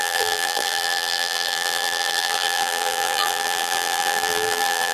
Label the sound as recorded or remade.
remade